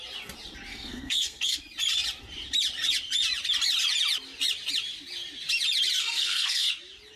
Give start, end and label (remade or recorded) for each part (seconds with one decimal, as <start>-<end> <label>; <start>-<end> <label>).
0.0-0.7 recorded; 0.7-1.6 remade; 1.6-6.0 recorded; 6.0-6.7 remade; 6.7-7.2 recorded